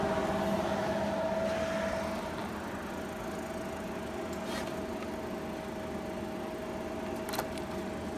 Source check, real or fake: real